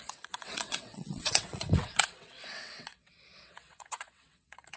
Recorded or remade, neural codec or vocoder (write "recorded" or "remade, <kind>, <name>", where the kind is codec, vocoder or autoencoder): remade, vocoder, WaveNeXt